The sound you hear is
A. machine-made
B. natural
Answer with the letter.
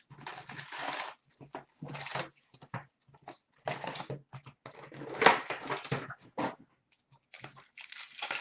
B